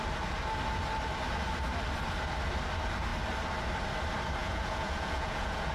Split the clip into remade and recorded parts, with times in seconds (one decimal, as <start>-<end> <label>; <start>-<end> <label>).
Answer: 0.0-4.4 recorded; 4.4-5.7 remade